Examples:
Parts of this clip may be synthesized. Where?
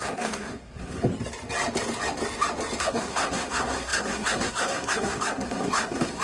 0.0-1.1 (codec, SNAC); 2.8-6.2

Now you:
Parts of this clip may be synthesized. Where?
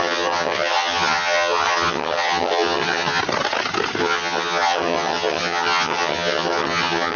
0.0-3.2 (vocoder, HiFi-GAN); 4.0-7.2